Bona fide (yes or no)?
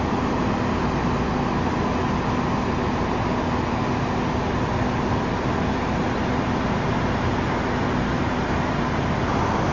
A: yes